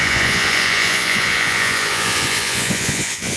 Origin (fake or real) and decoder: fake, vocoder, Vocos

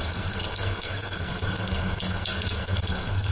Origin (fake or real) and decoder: fake, codec, SNAC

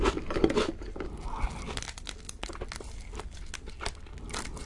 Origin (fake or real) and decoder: real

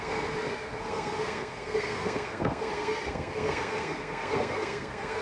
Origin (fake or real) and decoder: fake, codec, SNAC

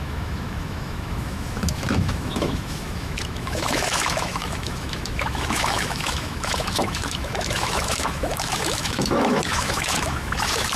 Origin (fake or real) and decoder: fake, autoencoder, DAC-VAE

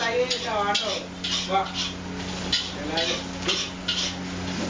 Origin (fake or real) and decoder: real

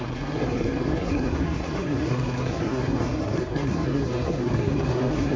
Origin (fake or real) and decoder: fake, codec, SNAC